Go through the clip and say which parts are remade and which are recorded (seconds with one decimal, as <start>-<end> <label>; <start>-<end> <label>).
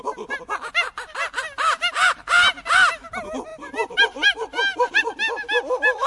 0.0-3.5 recorded; 3.5-5.0 remade; 5.0-6.1 recorded